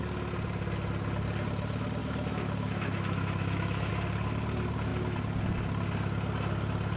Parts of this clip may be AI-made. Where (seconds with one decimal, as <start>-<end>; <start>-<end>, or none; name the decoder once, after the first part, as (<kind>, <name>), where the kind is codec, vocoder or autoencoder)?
2.0-3.9 (autoencoder, DAC-VAE)